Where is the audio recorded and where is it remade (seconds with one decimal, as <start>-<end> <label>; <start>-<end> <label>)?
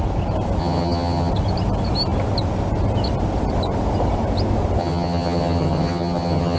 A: 0.0-0.6 recorded; 0.6-1.3 remade; 1.3-4.8 recorded; 4.8-6.6 remade